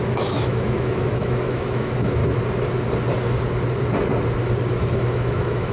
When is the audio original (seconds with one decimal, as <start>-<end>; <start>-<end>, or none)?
2.2-4.9